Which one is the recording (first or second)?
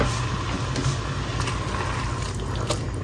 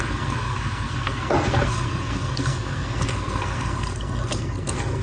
first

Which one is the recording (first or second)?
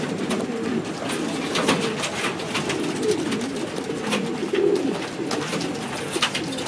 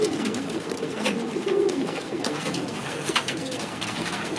first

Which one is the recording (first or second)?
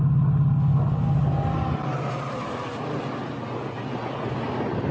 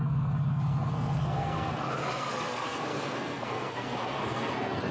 first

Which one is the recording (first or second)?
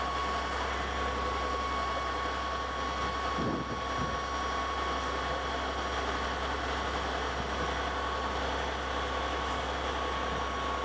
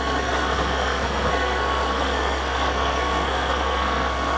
first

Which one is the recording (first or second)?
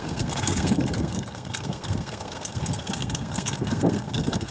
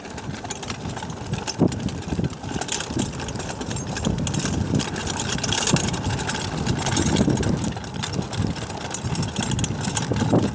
second